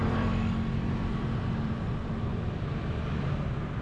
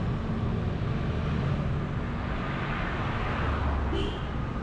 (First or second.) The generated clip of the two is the first